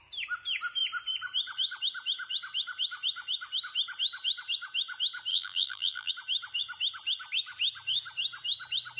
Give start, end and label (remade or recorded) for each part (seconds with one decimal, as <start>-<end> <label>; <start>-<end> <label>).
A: 0.0-5.3 recorded; 5.3-6.1 remade; 6.1-9.0 recorded